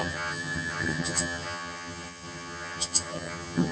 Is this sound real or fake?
fake